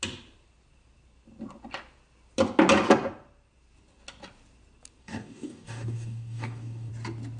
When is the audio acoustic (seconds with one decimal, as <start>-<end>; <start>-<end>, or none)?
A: 0.0-5.0; 6.9-7.4

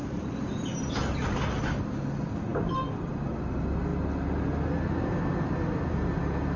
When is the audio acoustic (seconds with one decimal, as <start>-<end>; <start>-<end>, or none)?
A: 0.0-6.6

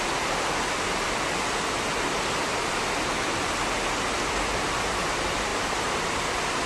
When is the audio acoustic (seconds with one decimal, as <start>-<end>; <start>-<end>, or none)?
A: 0.0-6.7

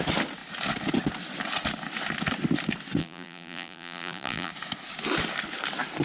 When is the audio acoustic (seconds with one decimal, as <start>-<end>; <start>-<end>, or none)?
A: 0.0-3.0; 4.5-6.0

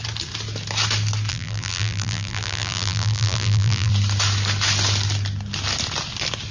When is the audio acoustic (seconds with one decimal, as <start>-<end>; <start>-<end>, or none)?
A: 0.0-1.3; 3.9-6.5

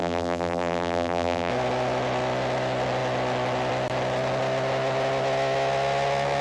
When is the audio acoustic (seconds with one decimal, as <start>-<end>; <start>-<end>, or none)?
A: 1.5-6.4

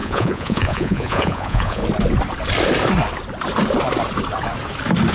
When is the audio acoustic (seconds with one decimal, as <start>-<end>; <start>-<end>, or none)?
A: 1.8-5.1